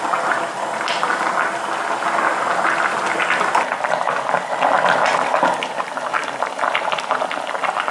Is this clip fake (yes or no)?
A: no